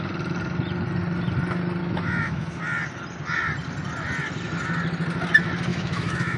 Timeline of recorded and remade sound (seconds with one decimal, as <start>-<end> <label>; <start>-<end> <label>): 0.0-1.8 recorded; 1.8-2.6 remade; 2.6-5.7 recorded; 5.7-6.4 remade